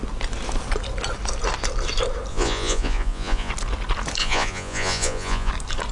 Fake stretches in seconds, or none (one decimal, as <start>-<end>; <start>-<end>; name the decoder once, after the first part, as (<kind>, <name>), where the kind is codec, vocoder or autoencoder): 2.3-3.5 (vocoder, Vocos); 4.2-5.5